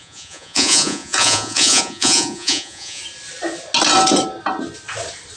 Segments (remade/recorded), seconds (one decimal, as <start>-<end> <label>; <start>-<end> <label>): 0.0-3.0 remade; 3.0-5.4 recorded